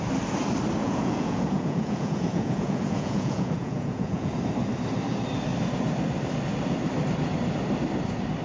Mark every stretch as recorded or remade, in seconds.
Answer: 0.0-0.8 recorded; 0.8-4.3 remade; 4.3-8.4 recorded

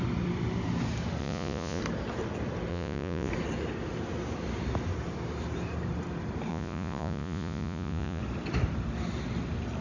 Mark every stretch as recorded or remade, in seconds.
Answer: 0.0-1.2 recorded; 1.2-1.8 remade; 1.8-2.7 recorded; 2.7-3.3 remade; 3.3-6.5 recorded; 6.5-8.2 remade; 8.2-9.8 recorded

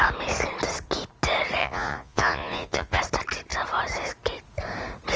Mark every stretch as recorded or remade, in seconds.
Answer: 0.0-1.6 recorded; 1.6-3.0 remade; 3.0-5.2 recorded